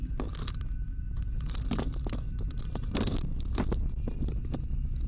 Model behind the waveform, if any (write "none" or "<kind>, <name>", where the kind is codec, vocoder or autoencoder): none